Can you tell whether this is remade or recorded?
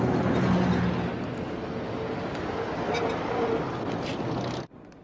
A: recorded